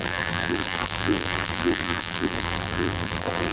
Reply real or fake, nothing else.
fake